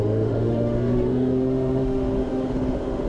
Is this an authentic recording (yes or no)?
no